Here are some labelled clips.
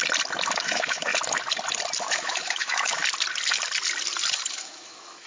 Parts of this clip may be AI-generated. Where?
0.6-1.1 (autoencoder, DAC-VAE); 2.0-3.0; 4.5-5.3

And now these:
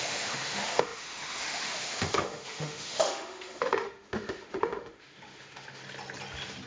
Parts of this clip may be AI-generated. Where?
0.0-5.8 (autoencoder, DAC-VAE)